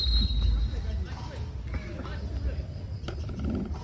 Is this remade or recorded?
recorded